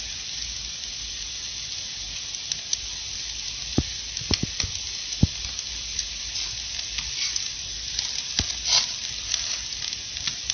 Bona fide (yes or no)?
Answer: yes